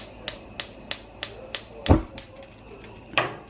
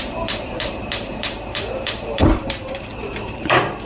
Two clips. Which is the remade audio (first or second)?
second